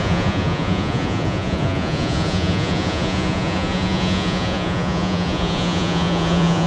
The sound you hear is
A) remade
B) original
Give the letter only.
A